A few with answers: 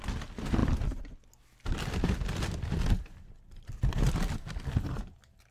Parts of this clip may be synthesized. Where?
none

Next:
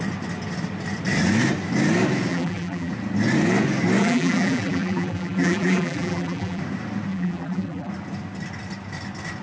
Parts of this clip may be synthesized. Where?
2.3-2.9; 4.0-6.6; 7.1-7.9

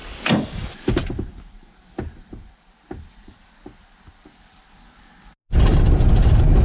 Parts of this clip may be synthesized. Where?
none

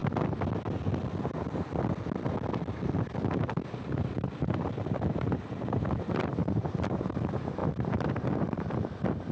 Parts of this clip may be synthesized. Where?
3.1-9.3

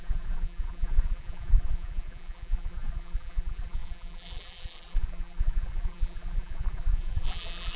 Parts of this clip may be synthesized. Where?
0.0-7.8

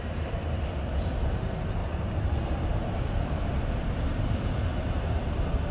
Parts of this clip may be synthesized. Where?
1.8-5.2

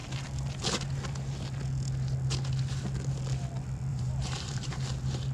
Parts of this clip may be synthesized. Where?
3.9-4.7